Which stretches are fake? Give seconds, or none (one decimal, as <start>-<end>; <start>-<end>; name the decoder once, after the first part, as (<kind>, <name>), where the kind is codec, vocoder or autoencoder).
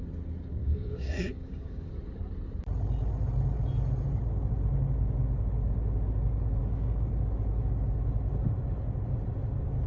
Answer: 0.6-1.9 (codec, DAC); 6.6-7.1